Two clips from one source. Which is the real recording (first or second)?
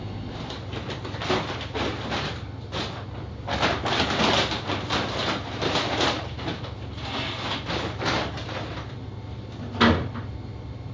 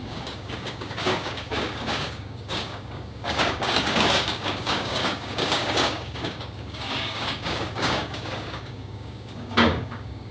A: first